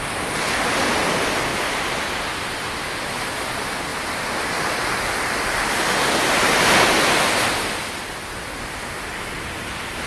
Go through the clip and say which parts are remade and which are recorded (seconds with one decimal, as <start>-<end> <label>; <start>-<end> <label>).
0.0-10.1 recorded